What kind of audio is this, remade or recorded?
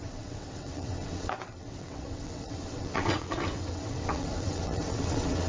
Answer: remade